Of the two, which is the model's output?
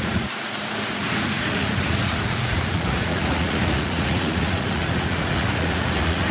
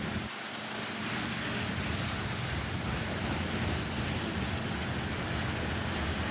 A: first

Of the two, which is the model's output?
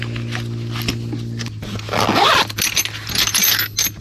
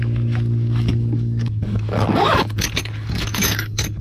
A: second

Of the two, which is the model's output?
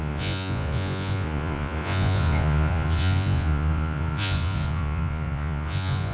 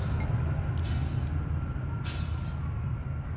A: first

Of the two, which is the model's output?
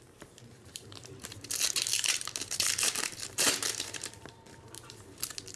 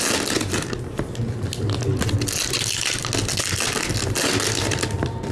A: first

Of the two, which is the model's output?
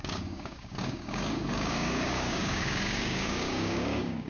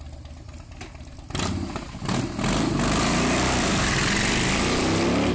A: first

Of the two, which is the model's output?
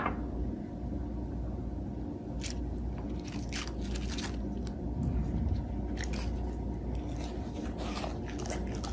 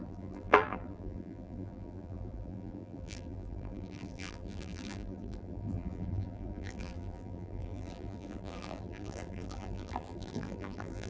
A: second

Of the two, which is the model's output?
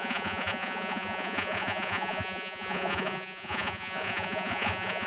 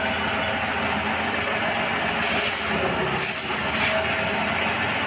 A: first